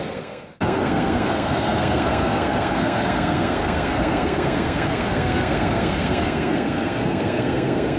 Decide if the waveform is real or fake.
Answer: fake